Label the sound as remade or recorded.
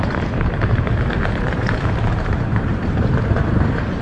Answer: remade